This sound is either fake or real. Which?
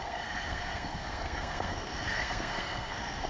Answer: fake